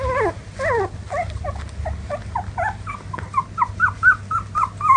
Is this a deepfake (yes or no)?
no